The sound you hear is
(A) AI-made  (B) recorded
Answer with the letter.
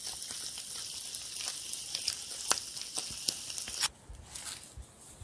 B